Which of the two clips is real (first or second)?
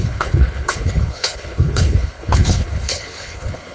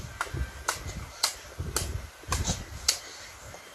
second